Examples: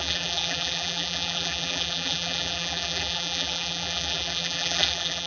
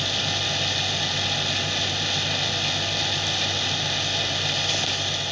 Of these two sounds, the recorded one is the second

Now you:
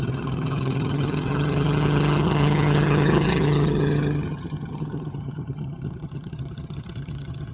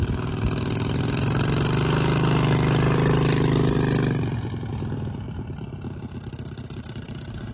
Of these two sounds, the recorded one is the second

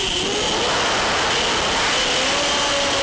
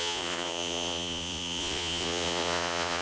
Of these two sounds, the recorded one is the first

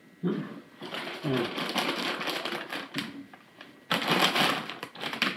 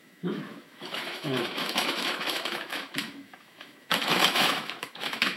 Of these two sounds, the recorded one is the first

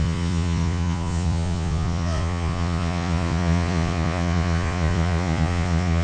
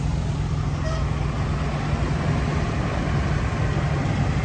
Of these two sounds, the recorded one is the second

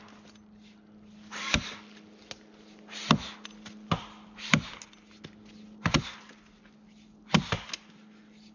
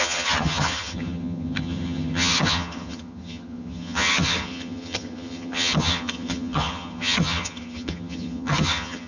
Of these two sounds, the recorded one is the first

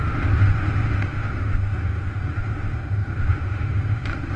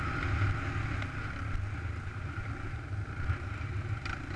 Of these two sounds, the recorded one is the second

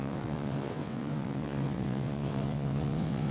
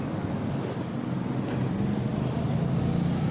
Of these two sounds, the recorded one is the second